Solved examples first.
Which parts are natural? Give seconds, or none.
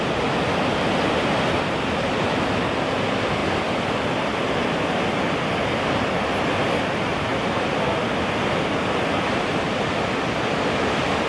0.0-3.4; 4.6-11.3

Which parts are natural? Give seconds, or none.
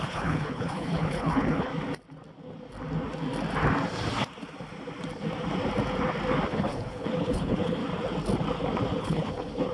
1.7-6.5; 7.8-9.0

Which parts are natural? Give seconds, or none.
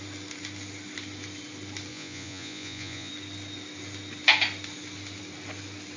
0.0-1.9; 3.1-6.0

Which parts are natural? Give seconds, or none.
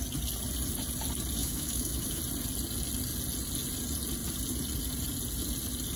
0.0-1.4; 2.2-6.0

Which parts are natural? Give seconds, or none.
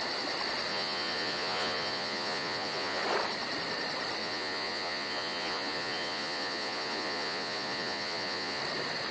0.0-0.7; 3.0-4.2; 8.6-9.1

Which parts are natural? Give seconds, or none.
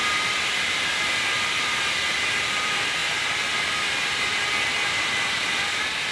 0.0-0.5; 3.0-4.9